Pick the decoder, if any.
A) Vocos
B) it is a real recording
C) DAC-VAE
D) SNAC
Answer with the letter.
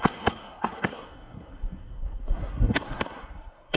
D